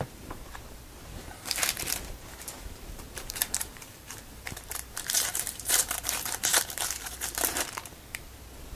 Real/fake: fake